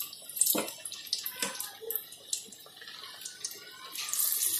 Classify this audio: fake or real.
real